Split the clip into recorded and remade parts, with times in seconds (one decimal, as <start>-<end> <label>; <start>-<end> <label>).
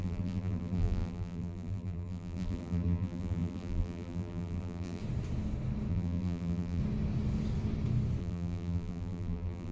0.0-5.0 remade; 5.0-5.9 recorded; 5.9-6.8 remade; 6.8-8.2 recorded; 8.2-9.7 remade